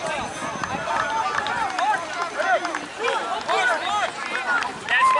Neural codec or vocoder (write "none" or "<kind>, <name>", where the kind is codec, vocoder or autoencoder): none